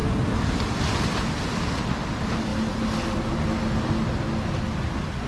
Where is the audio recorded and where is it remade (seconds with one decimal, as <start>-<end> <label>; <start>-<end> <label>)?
0.0-5.3 recorded